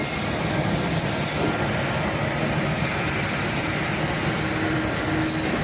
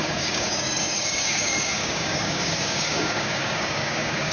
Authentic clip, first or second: first